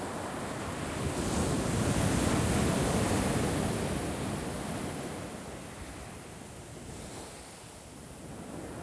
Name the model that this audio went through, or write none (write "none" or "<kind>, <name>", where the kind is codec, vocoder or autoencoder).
none